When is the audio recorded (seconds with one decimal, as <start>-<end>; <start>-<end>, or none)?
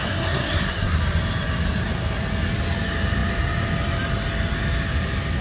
1.0-5.4